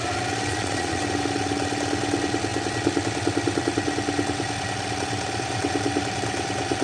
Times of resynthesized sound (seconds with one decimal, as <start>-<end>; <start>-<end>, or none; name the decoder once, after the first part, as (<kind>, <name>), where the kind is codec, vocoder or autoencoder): 0.5-1.0 (vocoder, Vocos)